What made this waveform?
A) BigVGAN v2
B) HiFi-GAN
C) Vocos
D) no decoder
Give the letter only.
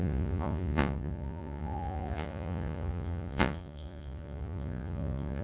C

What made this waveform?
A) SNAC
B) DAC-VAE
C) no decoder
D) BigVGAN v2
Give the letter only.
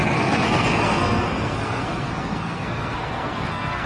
A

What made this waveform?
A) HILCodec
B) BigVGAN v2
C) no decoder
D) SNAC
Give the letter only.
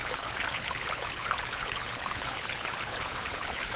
A